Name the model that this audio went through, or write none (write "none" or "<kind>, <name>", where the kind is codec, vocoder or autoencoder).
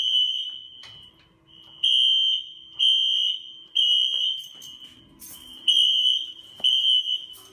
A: none